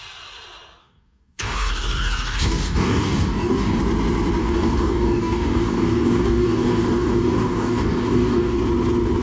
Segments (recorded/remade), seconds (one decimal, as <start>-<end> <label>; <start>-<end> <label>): 0.0-0.8 recorded; 0.8-3.8 remade; 3.8-4.4 recorded; 4.4-8.6 remade; 8.6-9.2 recorded